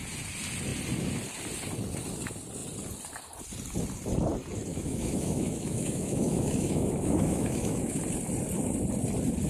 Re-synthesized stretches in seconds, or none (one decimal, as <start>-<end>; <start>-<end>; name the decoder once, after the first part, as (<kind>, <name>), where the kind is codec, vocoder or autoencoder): 4.7-8.0 (autoencoder, DAC-VAE)